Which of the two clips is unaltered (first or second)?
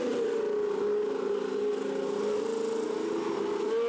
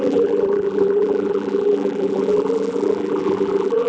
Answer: first